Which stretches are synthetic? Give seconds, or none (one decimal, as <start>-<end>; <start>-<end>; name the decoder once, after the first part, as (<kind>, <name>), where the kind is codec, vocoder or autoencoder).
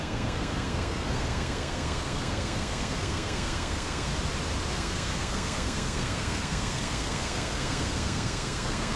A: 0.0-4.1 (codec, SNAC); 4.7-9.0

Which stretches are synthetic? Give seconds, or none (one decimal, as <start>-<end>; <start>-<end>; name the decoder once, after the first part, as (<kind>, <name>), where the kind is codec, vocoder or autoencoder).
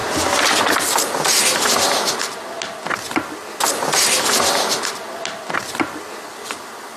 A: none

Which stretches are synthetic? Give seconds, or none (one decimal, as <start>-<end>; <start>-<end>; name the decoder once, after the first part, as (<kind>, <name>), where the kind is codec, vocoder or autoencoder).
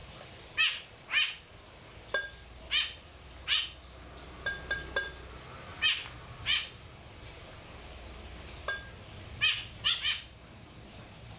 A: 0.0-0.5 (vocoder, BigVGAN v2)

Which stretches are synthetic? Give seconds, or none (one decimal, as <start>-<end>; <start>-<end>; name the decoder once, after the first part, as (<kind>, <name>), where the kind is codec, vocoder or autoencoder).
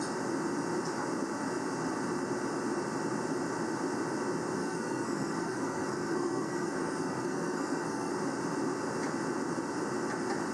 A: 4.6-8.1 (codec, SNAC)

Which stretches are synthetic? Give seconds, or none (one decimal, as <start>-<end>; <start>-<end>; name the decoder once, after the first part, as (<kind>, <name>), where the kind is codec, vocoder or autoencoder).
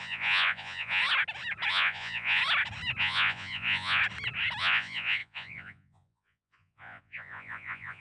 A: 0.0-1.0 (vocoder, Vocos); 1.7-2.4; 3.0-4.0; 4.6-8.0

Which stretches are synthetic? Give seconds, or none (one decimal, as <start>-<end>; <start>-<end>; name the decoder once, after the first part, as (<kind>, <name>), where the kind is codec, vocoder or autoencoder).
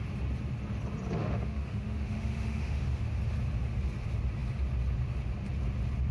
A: 1.2-3.0 (autoencoder, DAC-VAE)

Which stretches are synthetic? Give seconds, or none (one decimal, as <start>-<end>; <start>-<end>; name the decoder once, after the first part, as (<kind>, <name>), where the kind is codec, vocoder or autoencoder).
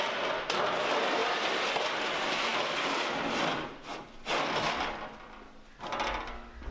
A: none